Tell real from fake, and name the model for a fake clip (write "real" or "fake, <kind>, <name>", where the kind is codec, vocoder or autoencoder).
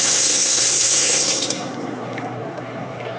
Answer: fake, codec, SNAC